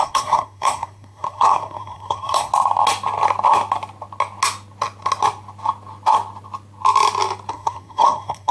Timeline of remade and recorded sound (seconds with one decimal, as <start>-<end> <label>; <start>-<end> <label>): 0.0-2.5 remade; 2.5-7.5 recorded; 7.5-8.5 remade